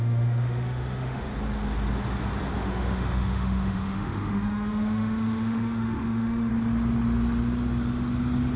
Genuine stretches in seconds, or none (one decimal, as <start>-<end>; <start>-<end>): 1.3-2.6; 6.5-8.6